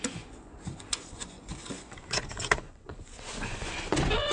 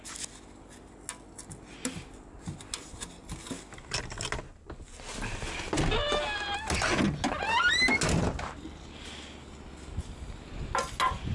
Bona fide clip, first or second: second